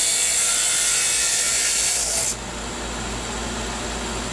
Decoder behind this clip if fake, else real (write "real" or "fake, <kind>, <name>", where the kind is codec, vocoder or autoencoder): real